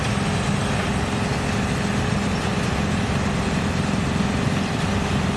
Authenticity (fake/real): real